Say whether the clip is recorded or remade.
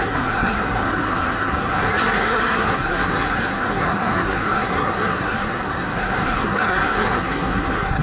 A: remade